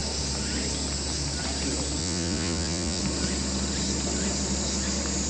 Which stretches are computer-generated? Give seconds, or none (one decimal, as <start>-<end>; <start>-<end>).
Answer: 2.0-3.0